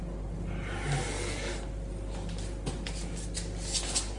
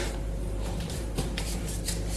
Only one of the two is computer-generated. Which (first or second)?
second